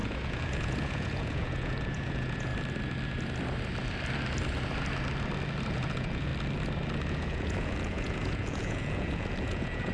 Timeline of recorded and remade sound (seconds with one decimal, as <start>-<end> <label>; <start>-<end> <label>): 0.0-2.5 remade; 2.5-5.7 recorded; 5.7-6.3 remade; 6.3-7.1 recorded; 7.1-9.9 remade